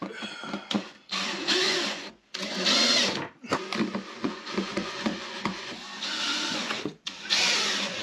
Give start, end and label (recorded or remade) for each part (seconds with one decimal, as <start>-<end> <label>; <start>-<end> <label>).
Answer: 0.0-2.9 remade; 2.9-4.1 recorded; 4.1-8.0 remade